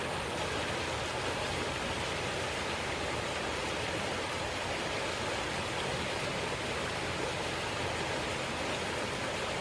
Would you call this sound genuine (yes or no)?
yes